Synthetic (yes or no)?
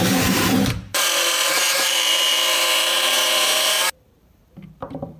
yes